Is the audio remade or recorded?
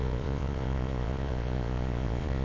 remade